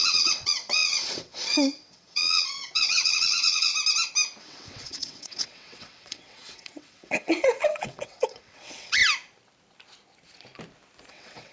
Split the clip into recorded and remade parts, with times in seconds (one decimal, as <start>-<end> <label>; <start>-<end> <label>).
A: 0.0-3.7 remade; 3.7-4.4 recorded; 4.4-9.0 remade; 9.0-11.1 recorded; 11.1-11.5 remade